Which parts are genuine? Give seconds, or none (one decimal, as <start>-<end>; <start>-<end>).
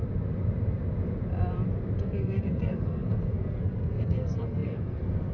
0.0-2.0